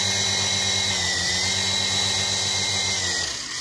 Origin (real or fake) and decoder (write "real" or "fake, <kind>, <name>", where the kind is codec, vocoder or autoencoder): real